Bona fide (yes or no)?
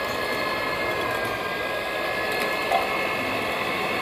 yes